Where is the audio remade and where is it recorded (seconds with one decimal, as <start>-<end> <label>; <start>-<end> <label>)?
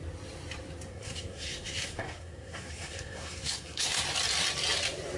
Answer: 0.0-0.9 recorded; 0.9-4.0 remade; 4.0-5.2 recorded